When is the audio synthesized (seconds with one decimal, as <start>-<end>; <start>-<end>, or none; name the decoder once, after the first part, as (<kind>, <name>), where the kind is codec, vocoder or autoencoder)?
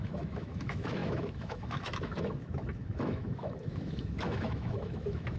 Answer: 0.0-5.4 (autoencoder, DAC-VAE)